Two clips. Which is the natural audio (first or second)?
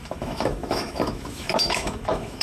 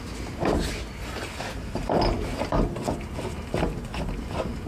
second